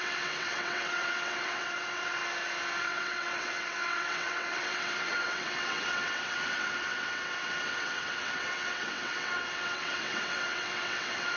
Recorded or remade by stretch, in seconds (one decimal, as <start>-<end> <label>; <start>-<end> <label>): 0.0-2.2 remade; 2.2-2.8 recorded; 2.8-11.4 remade